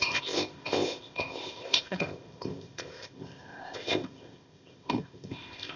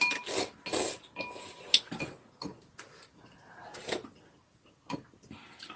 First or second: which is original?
second